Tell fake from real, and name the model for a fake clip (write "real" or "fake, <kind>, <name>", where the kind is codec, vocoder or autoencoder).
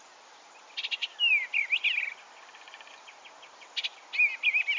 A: real